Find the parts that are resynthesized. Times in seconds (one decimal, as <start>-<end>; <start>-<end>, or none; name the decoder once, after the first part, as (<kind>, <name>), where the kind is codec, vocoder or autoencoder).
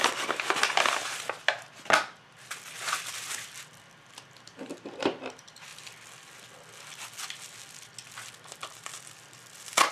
none